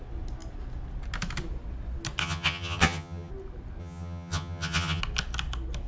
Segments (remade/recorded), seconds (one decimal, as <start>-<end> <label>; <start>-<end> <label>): 0.0-2.2 recorded; 2.2-3.3 remade; 3.3-3.8 recorded; 3.8-5.0 remade; 5.0-5.9 recorded

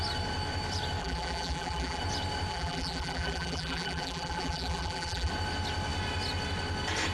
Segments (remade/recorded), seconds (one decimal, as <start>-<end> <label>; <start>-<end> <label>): 0.0-1.0 recorded; 1.0-2.0 remade; 2.0-2.5 recorded; 2.5-5.3 remade; 5.3-7.1 recorded

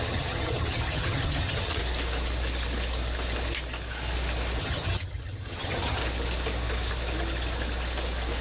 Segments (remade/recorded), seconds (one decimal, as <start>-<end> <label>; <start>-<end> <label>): 0.0-1.8 remade; 1.8-4.6 recorded; 4.6-6.0 remade; 6.0-8.4 recorded

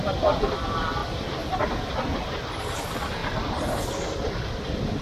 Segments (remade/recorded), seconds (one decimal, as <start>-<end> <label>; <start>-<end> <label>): 0.0-5.0 recorded

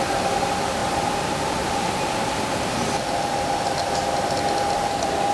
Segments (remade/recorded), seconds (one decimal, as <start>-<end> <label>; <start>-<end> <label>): 0.0-5.3 recorded